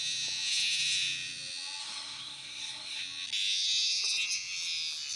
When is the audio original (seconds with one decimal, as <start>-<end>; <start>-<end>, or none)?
0.0-1.8; 3.0-5.2